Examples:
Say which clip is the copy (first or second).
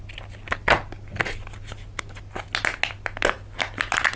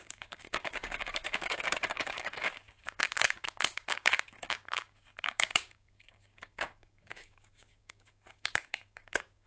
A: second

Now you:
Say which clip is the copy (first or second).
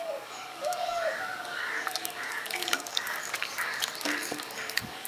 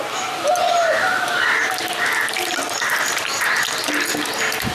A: first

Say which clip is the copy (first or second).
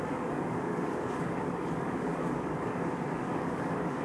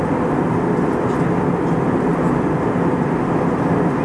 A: first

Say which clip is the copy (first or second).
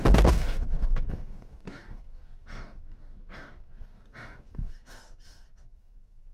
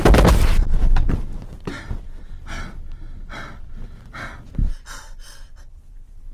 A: first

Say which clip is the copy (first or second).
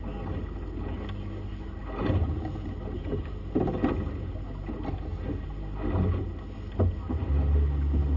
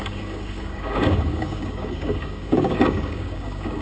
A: second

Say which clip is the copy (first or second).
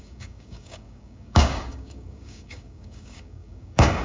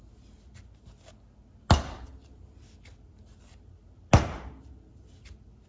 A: first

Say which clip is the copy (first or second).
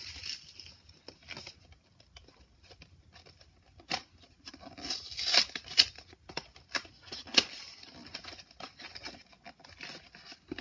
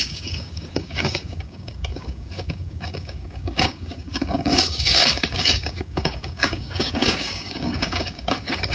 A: second